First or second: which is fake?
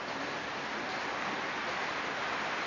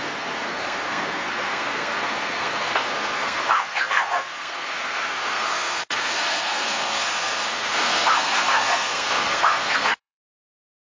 second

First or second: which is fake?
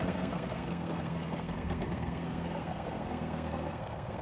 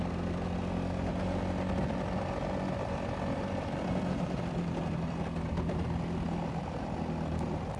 first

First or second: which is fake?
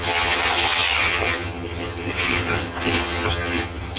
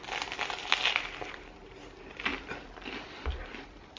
first